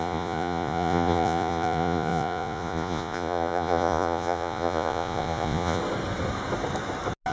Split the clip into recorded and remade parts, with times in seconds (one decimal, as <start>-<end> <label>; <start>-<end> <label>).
0.0-5.8 remade; 5.8-7.3 recorded